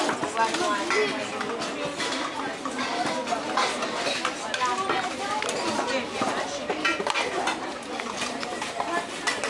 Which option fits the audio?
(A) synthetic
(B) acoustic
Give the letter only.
B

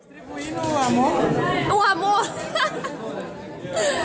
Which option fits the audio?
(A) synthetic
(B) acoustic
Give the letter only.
B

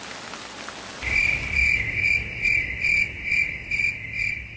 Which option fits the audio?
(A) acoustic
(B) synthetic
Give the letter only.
A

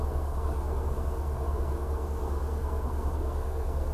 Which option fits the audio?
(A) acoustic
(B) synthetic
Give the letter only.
B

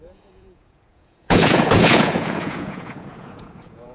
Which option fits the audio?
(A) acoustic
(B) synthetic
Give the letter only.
B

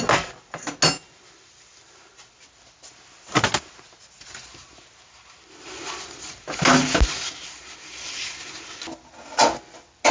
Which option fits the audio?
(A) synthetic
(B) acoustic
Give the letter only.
B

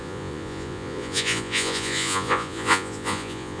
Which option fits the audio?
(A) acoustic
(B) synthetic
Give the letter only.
B